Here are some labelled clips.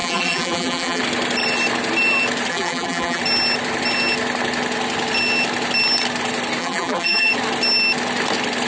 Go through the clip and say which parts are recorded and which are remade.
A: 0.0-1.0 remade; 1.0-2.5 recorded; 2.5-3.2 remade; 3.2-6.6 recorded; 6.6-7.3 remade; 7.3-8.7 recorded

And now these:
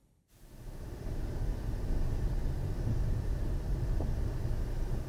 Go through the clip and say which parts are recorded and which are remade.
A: 0.0-1.7 remade; 1.7-2.4 recorded; 2.4-3.4 remade; 3.4-5.1 recorded

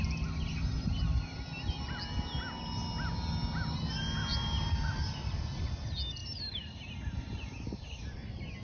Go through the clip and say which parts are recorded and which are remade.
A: 0.0-4.3 recorded; 4.3-5.6 remade; 5.6-6.2 recorded; 6.2-8.0 remade; 8.0-8.6 recorded

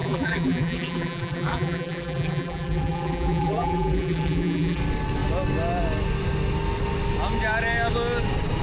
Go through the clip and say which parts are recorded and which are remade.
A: 0.0-4.8 remade; 4.8-8.6 recorded